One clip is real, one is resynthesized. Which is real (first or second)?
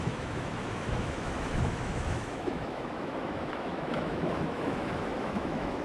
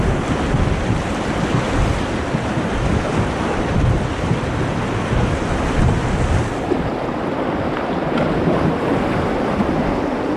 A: second